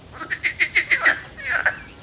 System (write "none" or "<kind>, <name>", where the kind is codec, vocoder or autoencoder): none